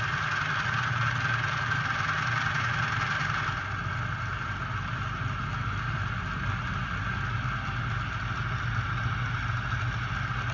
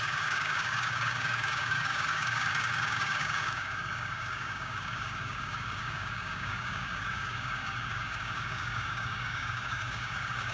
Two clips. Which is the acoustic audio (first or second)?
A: first